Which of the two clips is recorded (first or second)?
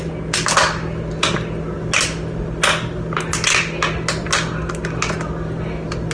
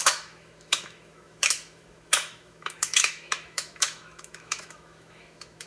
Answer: first